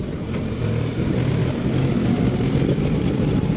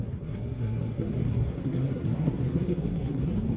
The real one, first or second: first